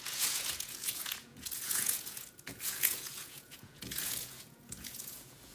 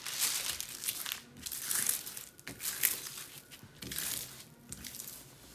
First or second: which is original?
second